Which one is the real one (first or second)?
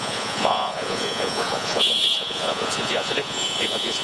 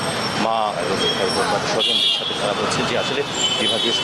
second